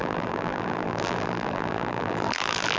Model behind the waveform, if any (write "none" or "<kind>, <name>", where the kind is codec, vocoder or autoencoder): vocoder, BigVGAN v2